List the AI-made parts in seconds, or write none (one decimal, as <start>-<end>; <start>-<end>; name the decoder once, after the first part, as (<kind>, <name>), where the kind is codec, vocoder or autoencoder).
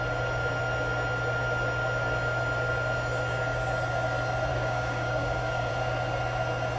4.5-5.7 (codec, DAC)